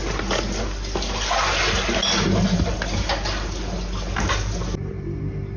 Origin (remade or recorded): recorded